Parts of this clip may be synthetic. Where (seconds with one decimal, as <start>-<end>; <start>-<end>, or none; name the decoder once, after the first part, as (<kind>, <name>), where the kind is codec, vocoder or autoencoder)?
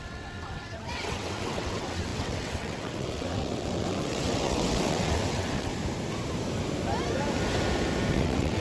0.0-5.7 (vocoder, WaveNeXt); 8.1-8.6